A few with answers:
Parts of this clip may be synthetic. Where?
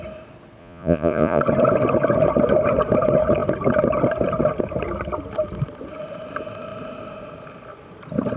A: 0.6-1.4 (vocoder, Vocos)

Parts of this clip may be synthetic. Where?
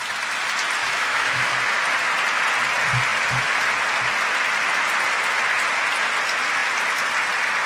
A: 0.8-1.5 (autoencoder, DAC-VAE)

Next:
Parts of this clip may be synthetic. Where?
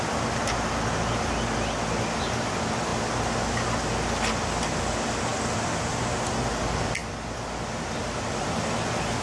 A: none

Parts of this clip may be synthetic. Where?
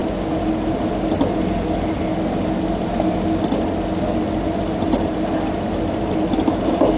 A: none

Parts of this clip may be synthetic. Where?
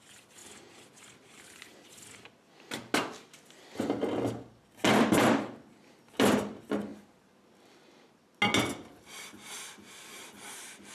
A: none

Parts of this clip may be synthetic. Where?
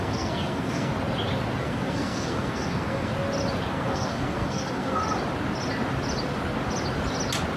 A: 0.0-0.9 (codec, SNAC); 1.6-3.1; 3.7-5.0